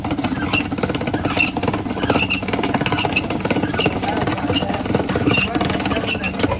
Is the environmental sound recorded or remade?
recorded